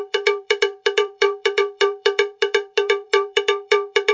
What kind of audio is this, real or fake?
fake